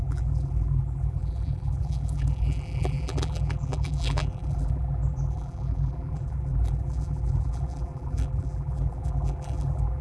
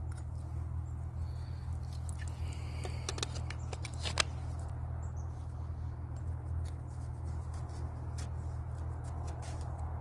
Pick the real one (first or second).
second